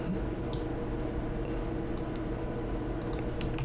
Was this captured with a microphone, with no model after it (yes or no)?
yes